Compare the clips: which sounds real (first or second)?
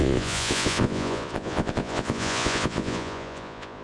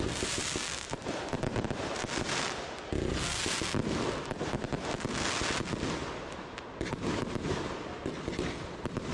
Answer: second